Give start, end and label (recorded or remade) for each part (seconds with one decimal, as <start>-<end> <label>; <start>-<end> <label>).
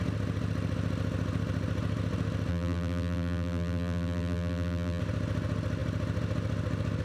0.0-2.5 recorded; 2.5-5.0 remade; 5.0-7.0 recorded